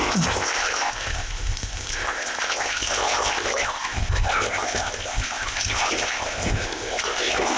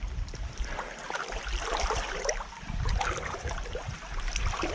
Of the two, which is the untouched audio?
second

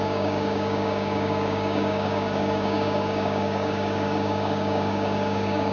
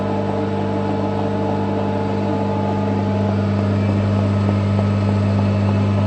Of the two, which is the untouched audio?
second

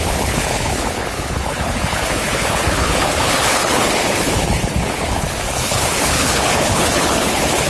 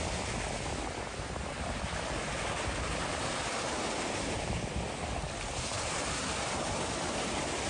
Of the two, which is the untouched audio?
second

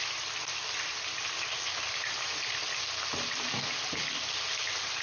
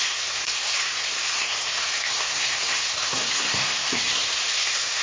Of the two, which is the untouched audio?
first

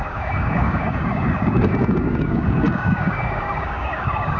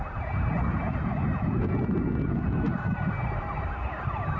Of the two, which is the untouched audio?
second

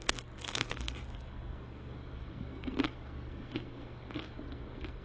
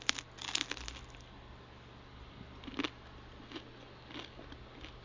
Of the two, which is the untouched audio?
second